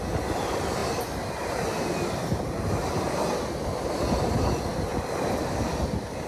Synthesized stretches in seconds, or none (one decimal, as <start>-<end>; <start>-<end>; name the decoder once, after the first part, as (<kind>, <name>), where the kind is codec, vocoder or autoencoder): 4.9-6.3 (vocoder, BigVGAN v2)